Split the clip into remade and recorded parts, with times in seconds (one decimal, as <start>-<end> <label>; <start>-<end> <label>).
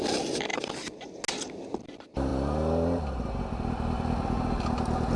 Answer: 0.0-5.2 recorded